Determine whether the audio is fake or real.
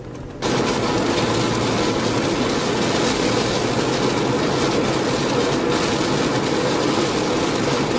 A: real